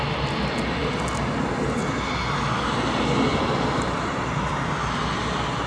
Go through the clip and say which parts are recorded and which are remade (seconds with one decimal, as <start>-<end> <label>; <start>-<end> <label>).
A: 0.0-3.3 recorded; 3.3-4.7 remade; 4.7-5.7 recorded